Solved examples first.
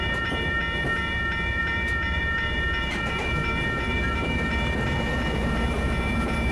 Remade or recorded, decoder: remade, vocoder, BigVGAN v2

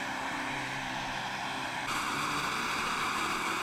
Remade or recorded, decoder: remade, vocoder, BigVGAN v2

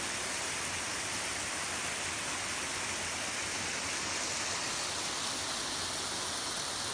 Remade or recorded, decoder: recorded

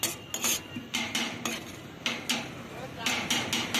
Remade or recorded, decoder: recorded